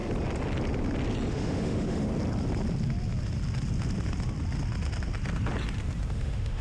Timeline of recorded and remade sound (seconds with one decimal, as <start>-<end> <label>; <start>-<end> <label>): 0.0-1.3 recorded; 1.3-2.1 remade; 2.1-6.1 recorded; 6.1-6.6 remade